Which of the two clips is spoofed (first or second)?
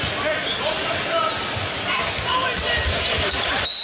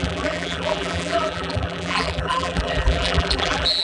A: second